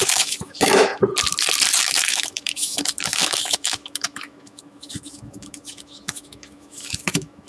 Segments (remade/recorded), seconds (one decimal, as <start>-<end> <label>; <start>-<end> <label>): 0.0-0.9 remade; 0.9-1.8 recorded; 1.8-7.5 remade